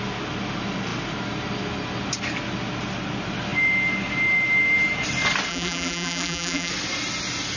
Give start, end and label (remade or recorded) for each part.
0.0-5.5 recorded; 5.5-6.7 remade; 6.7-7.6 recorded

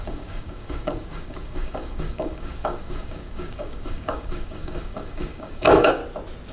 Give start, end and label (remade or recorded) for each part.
0.0-6.0 remade; 6.0-6.5 recorded

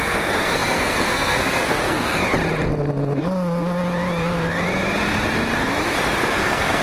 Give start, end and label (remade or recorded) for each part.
0.0-2.2 remade; 2.2-6.3 recorded; 6.3-6.8 remade

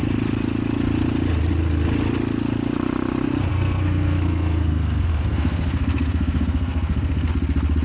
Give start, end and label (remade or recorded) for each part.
0.0-3.5 recorded; 3.5-7.3 remade; 7.3-7.8 recorded